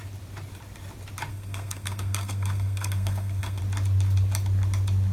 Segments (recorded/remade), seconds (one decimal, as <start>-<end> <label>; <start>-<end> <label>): 0.0-1.3 recorded; 1.3-3.6 remade; 3.6-5.1 recorded